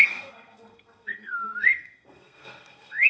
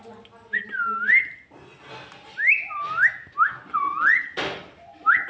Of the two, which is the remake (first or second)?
first